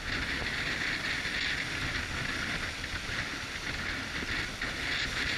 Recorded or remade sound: recorded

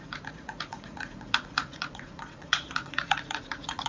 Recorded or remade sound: remade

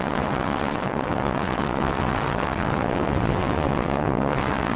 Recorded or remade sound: remade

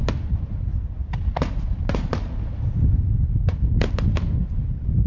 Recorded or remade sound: recorded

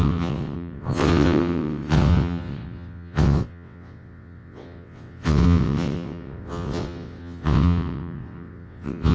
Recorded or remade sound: remade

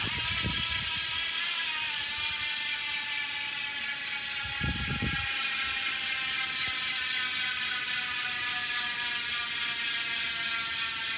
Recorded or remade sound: recorded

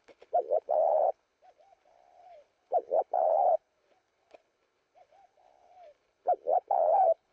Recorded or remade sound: remade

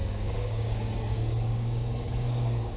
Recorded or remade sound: remade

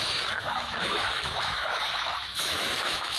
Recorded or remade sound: remade